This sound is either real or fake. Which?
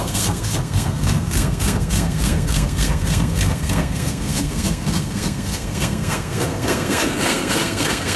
fake